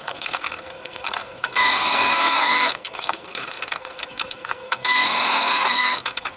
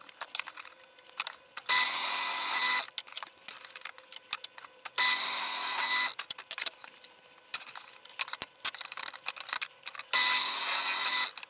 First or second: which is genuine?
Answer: second